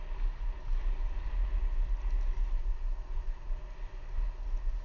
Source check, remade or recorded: recorded